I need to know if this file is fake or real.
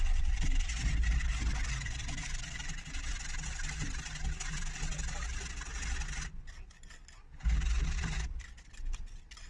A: real